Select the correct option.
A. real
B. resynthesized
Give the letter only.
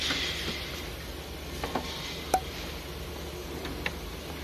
A